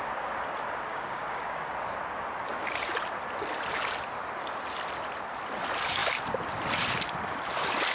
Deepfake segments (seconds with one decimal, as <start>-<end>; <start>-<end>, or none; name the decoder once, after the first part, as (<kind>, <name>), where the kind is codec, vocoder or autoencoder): 0.9-1.7 (codec, DAC)